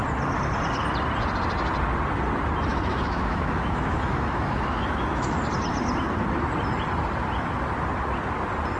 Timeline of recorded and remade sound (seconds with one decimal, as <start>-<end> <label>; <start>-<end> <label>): 0.0-2.7 recorded; 2.7-5.4 remade; 5.4-8.8 recorded